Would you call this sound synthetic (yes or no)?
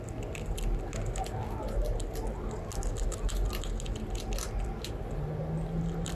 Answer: no